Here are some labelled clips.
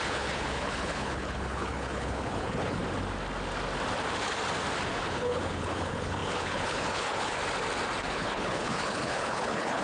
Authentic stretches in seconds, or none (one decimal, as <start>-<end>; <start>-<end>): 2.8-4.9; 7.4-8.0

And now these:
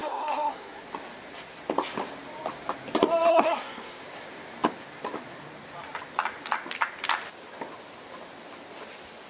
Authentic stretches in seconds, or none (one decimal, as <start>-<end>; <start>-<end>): 0.8-3.3; 4.0-9.3

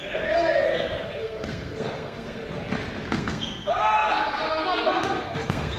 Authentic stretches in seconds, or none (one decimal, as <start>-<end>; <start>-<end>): 2.4-3.1

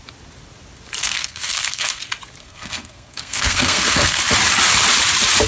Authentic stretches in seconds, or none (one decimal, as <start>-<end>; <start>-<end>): 0.0-1.0; 2.0-2.4; 4.2-5.5

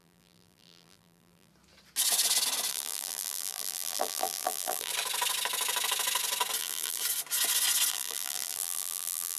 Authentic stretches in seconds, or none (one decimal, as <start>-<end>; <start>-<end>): 1.5-2.7; 4.9-6.6; 7.0-7.9

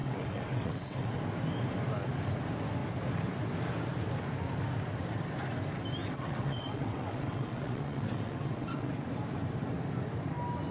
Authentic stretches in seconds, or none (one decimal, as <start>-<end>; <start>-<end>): 1.2-6.0; 8.9-10.7